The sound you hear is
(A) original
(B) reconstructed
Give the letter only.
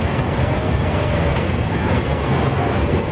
B